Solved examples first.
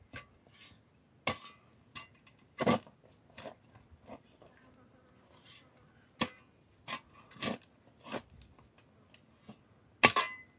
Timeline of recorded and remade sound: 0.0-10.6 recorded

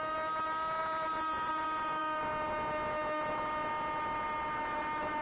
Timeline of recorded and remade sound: 0.0-0.8 recorded; 0.8-1.5 remade; 1.5-5.2 recorded

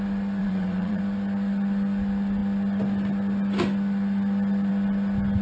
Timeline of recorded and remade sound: 0.0-0.4 recorded; 0.4-1.0 remade; 1.0-5.4 recorded

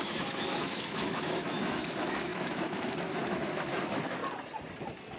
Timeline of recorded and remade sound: 0.0-4.2 remade; 4.2-5.2 recorded

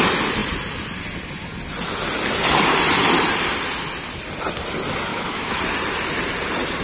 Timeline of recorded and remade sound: 0.0-5.1 recorded; 5.1-5.6 remade; 5.6-6.8 recorded